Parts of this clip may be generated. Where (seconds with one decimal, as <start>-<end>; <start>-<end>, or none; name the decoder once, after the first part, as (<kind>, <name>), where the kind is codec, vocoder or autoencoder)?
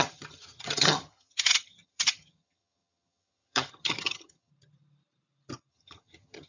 0.0-4.5 (vocoder, HiFi-GAN); 5.7-6.5